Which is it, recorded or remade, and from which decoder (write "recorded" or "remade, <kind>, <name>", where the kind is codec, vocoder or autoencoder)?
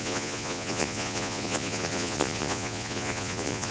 remade, vocoder, Vocos